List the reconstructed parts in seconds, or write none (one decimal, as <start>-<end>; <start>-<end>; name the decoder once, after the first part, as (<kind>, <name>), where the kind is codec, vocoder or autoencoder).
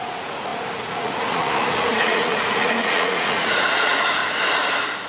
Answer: 0.0-4.2 (vocoder, Vocos)